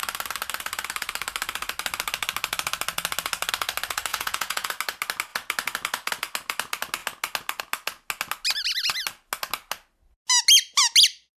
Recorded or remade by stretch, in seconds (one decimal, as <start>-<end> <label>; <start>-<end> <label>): 0.0-4.1 recorded; 4.1-4.7 remade; 4.7-11.4 recorded